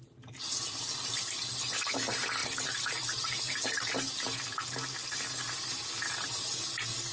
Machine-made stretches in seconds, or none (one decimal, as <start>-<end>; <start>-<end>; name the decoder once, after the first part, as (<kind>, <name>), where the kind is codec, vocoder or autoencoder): 0.5-1.1 (vocoder, BigVGAN v2); 2.4-3.9